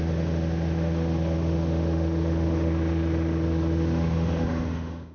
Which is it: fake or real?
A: fake